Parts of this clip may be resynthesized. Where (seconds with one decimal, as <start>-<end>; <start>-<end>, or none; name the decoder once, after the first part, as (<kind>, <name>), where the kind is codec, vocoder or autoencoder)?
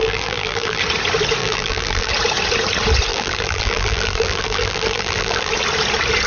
0.0-0.8 (vocoder, BigVGAN v2); 1.4-2.1; 3.1-5.5